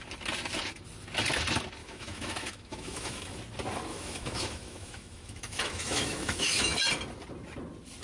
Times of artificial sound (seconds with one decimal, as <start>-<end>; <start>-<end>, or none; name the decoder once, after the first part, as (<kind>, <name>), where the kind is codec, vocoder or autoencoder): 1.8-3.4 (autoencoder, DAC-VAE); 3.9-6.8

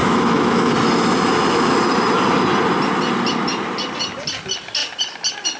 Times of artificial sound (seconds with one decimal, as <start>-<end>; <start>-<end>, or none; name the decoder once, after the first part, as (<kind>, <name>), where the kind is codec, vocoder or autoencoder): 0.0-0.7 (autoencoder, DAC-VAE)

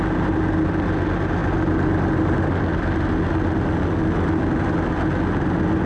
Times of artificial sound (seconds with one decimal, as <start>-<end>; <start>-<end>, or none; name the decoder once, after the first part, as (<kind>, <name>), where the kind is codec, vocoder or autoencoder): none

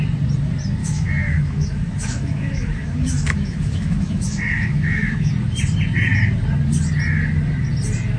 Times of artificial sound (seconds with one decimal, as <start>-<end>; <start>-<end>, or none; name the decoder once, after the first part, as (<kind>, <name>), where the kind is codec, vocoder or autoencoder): 0.8-5.3 (autoencoder, DAC-VAE)

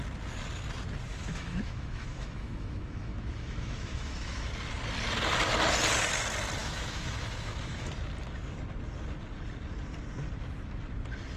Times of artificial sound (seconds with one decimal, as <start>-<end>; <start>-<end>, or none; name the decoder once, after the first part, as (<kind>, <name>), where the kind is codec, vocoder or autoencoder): 1.1-4.5 (autoencoder, DAC-VAE); 6.6-7.9

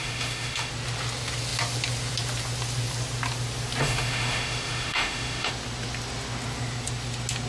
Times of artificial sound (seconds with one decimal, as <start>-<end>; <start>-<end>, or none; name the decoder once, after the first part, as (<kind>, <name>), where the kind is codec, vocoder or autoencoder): 0.0-0.7 (autoencoder, DAC-VAE); 3.8-5.5

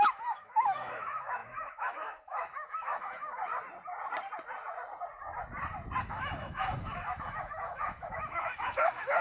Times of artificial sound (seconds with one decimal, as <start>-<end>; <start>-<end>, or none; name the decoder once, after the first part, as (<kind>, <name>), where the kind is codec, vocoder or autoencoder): 0.0-3.5 (autoencoder, DAC-VAE); 6.0-9.2

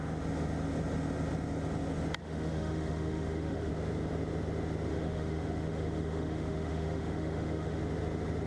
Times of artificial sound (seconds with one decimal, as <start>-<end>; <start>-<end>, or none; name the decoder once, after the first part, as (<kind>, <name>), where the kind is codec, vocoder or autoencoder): 2.2-3.7 (autoencoder, DAC-VAE); 4.9-7.8